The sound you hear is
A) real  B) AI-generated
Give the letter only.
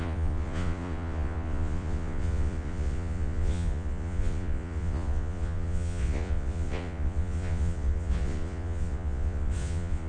B